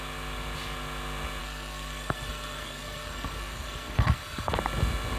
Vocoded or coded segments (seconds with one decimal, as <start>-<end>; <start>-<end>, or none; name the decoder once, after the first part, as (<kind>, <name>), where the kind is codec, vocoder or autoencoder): 1.4-4.5 (codec, SNAC)